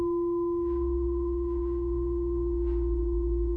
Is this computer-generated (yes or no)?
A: yes